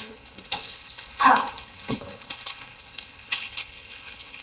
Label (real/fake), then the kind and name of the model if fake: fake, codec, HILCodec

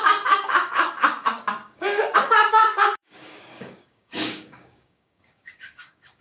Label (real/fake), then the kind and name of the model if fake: fake, codec, DAC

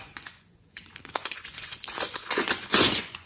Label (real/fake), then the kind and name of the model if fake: fake, vocoder, Vocos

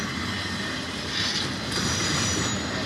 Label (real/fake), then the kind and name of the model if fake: real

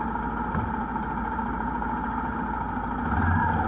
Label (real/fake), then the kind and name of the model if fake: real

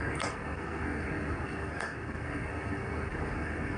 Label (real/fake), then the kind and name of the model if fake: fake, codec, SNAC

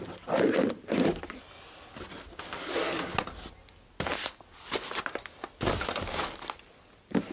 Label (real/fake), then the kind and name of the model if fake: real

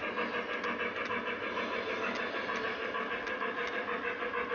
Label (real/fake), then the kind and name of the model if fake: real